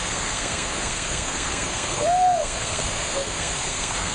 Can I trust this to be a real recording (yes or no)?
no